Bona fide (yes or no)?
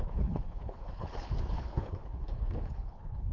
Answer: no